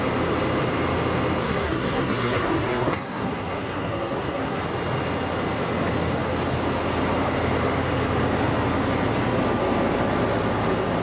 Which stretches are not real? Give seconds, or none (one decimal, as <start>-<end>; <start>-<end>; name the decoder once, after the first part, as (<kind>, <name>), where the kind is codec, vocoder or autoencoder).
1.4-4.6 (codec, SNAC)